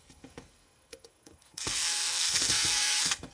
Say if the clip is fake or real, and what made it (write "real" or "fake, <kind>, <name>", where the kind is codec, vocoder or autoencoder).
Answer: fake, codec, SNAC